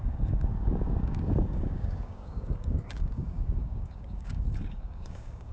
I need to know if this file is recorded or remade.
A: remade